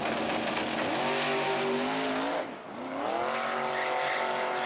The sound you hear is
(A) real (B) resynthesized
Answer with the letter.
A